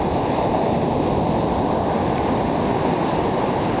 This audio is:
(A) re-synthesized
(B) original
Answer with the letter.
B